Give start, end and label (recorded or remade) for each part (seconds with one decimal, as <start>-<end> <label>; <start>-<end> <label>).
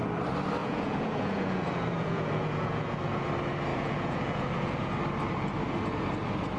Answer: 0.0-0.6 recorded; 0.6-3.3 remade; 3.3-3.7 recorded; 3.7-4.9 remade; 4.9-6.6 recorded